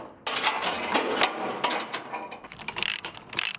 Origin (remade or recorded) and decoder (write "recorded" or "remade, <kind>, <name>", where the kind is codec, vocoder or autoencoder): recorded